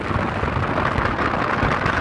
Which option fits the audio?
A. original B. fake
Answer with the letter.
A